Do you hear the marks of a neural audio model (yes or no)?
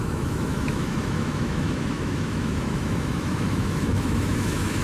yes